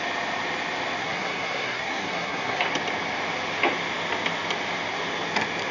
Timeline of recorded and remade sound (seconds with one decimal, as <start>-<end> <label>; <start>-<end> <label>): 0.0-1.0 recorded; 1.0-2.6 remade; 2.6-5.7 recorded